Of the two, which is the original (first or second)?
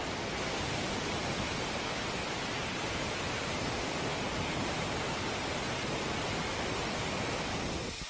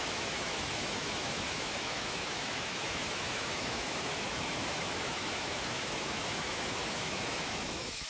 first